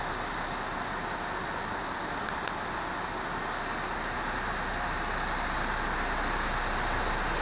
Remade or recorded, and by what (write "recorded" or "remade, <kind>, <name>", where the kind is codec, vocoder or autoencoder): recorded